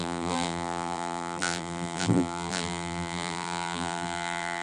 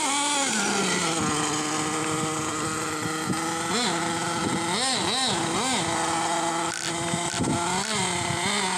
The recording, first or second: second